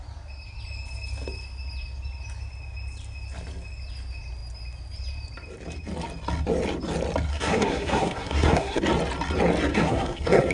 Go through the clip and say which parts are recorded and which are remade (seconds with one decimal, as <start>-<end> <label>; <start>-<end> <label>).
0.0-7.3 recorded; 7.3-8.8 remade; 8.8-9.7 recorded; 9.7-10.5 remade